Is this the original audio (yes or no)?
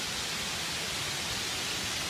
yes